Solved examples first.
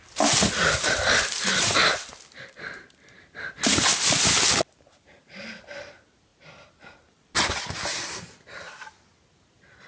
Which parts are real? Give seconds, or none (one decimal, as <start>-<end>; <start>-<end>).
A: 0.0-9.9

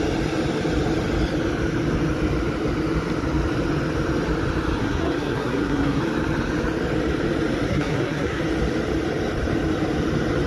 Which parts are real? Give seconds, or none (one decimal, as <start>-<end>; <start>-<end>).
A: 0.0-4.8; 6.0-7.7; 8.4-10.5

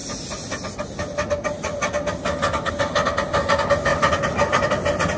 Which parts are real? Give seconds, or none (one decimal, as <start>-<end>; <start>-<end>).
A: 0.0-5.2

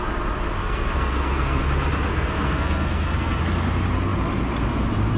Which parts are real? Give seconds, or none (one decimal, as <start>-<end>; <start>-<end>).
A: 0.0-0.6; 1.6-2.1; 3.4-5.2

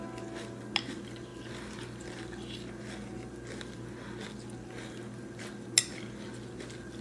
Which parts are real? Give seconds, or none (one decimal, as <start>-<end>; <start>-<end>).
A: 0.0-7.0

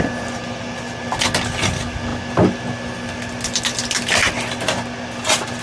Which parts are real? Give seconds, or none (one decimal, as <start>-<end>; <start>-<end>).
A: 0.0-5.6